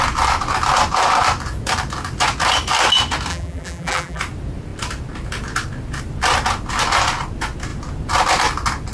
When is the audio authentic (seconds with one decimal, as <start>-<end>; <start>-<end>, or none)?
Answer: 0.0-3.3; 4.2-8.9